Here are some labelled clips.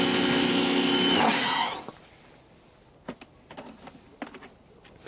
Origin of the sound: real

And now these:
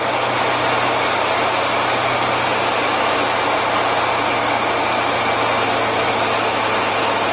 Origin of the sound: real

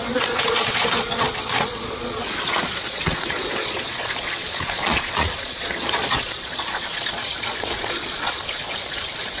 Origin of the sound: fake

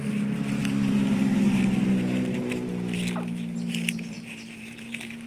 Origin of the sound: real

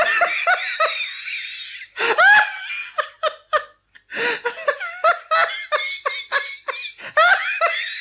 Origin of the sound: real